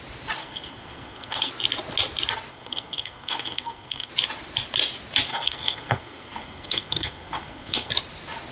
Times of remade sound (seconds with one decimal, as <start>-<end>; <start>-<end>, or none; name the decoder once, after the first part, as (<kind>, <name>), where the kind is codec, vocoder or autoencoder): 0.4-1.5 (codec, SNAC); 2.5-4.1; 5.3-7.9